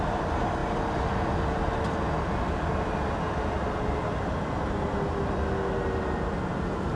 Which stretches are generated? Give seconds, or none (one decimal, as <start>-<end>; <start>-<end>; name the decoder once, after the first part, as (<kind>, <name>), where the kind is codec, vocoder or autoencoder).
none